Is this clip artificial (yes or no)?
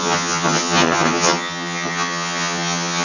yes